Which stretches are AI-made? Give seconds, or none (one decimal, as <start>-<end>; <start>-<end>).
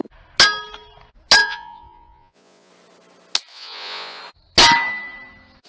1.4-2.7; 3.5-4.2